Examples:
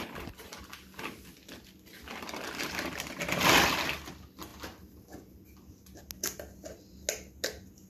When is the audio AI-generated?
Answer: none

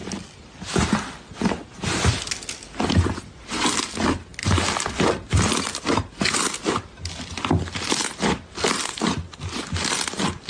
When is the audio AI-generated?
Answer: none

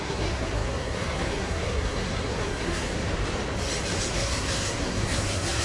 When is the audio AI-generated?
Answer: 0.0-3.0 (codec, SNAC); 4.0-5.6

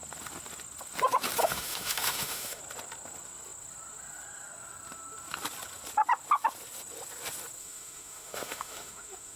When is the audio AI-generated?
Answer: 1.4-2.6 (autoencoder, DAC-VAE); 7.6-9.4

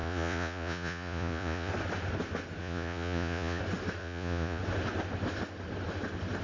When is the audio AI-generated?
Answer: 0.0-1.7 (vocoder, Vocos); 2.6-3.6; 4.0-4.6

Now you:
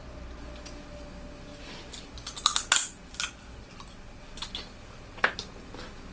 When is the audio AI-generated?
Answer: none

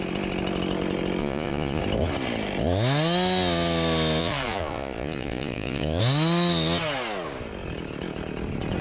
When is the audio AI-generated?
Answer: 1.2-1.8 (vocoder, Vocos); 4.2-6.0

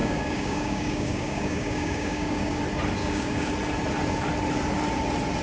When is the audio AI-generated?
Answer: 0.0-2.6 (codec, DAC); 3.0-3.5